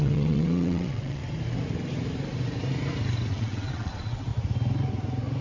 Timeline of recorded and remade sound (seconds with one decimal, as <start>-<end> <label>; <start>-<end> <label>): 0.0-1.2 remade; 1.2-3.3 recorded; 3.3-4.3 remade; 4.3-5.4 recorded